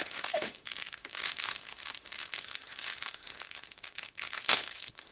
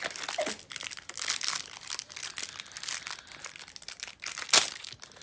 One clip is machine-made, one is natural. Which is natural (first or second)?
second